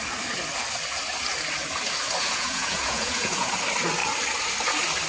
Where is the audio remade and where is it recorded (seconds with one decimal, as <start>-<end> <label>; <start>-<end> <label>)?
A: 0.0-2.2 recorded; 2.2-3.5 remade; 3.5-5.1 recorded